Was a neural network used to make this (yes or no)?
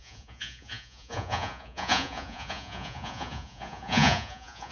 yes